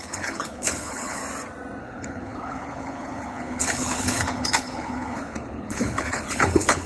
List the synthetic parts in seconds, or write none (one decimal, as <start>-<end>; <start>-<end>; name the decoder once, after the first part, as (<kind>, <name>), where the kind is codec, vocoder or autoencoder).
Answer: 0.0-1.2 (codec, HILCodec); 1.8-6.9